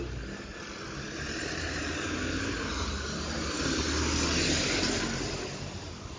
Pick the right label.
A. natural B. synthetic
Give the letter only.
A